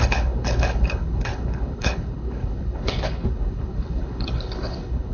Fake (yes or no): yes